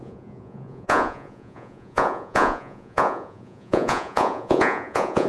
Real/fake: fake